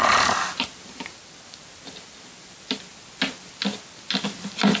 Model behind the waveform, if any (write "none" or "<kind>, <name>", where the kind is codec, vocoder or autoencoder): none